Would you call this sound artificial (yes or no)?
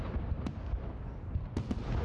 no